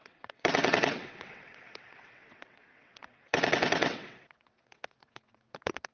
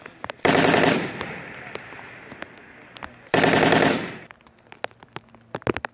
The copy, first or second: first